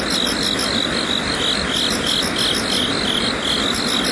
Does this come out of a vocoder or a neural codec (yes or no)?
no